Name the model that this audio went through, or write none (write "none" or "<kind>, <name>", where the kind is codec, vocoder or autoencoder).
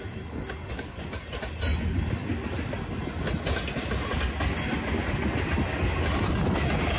none